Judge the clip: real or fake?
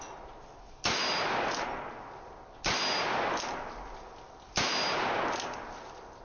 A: real